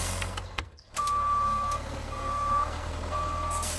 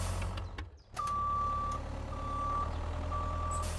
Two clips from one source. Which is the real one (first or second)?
second